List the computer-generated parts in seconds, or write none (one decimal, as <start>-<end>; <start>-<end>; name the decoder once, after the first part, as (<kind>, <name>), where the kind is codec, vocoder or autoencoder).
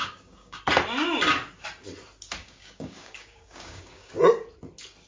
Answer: 0.0-0.6 (codec, DAC); 2.4-4.1